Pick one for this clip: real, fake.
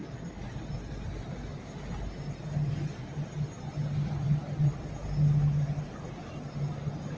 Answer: real